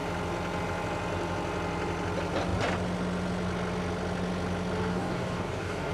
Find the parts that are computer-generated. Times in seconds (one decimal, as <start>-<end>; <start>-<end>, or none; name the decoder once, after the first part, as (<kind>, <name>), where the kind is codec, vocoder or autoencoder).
4.9-5.9 (codec, DAC)